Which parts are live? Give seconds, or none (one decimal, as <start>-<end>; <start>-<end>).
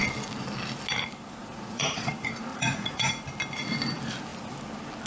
0.0-1.4; 2.1-2.5; 3.1-5.1